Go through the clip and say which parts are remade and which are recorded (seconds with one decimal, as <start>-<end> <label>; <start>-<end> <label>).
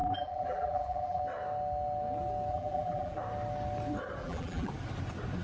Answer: 0.0-1.2 remade; 1.2-2.5 recorded; 2.5-3.2 remade; 3.2-4.2 recorded; 4.2-4.7 remade; 4.7-5.4 recorded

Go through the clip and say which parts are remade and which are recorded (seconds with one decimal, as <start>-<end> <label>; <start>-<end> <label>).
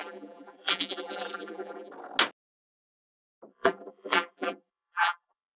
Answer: 0.0-1.9 remade; 1.9-3.5 recorded; 3.5-5.6 remade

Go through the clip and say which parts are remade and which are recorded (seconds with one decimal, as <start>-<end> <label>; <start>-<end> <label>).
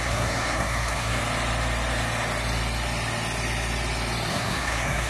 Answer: 0.0-1.2 remade; 1.2-4.3 recorded; 4.3-5.1 remade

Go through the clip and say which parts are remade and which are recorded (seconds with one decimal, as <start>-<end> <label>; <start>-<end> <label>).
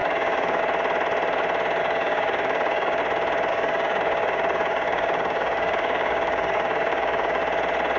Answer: 0.0-0.6 remade; 0.6-1.8 recorded; 1.8-3.0 remade; 3.0-3.5 recorded; 3.5-7.4 remade; 7.4-8.0 recorded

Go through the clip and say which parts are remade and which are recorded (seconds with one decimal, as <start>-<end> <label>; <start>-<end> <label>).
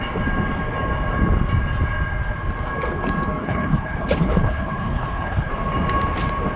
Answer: 0.0-3.4 recorded; 3.4-5.5 remade; 5.5-6.6 recorded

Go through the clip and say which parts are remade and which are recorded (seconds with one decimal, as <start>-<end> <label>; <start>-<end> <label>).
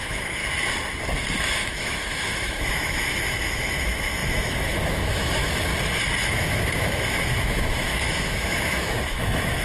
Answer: 0.0-0.4 remade; 0.4-1.4 recorded; 1.4-5.7 remade; 5.7-6.2 recorded; 6.2-9.6 remade